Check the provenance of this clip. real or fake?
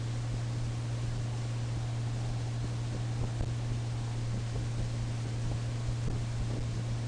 real